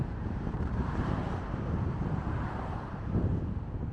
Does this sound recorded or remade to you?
remade